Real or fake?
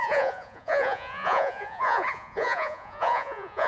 fake